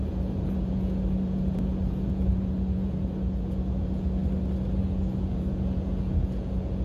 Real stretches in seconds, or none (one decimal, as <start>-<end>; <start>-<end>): 4.2-4.8